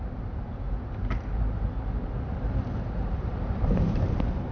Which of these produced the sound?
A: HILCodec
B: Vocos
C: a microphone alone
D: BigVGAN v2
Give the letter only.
D